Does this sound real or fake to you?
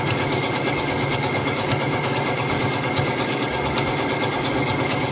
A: fake